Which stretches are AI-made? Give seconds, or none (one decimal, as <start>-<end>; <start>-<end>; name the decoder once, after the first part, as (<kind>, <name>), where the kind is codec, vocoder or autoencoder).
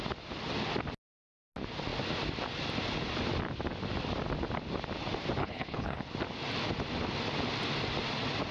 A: 5.4-6.0 (codec, HILCodec)